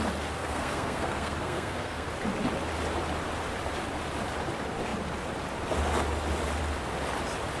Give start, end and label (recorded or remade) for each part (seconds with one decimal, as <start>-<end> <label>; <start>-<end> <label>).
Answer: 0.0-0.4 recorded; 0.4-2.1 remade; 2.1-7.6 recorded